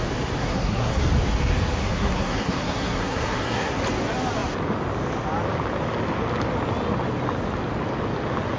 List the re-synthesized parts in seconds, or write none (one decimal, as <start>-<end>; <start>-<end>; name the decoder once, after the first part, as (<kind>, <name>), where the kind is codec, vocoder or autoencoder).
0.4-1.1 (codec, SNAC); 1.8-3.8